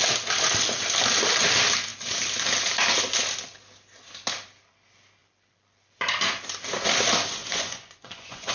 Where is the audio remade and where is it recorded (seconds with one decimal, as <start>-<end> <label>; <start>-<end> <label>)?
0.0-7.4 recorded; 7.4-8.5 remade